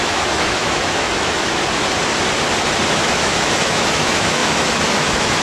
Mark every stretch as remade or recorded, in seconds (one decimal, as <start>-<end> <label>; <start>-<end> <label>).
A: 0.0-1.6 remade; 1.6-2.9 recorded; 2.9-5.4 remade